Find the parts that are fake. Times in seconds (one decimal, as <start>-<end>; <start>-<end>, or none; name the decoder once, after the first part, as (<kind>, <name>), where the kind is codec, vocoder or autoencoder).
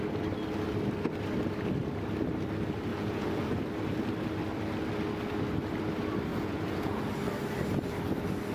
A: 2.9-3.5 (vocoder, Vocos); 6.3-7.1